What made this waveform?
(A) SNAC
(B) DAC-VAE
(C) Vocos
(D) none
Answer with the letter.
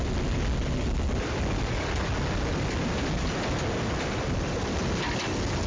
D